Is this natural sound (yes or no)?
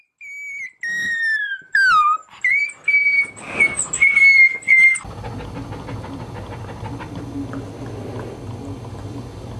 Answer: yes